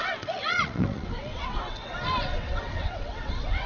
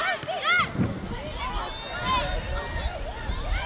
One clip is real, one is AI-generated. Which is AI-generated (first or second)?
first